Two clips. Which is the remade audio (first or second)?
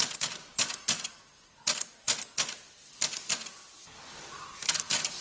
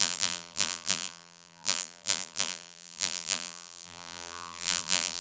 second